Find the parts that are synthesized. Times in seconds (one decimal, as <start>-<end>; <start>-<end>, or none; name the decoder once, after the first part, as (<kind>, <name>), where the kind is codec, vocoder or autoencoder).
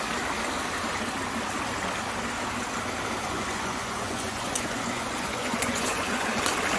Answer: 3.2-6.3 (vocoder, Vocos)